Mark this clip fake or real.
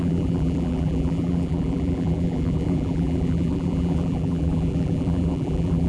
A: fake